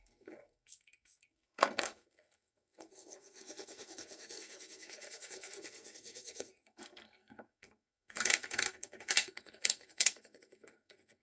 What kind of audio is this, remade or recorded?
remade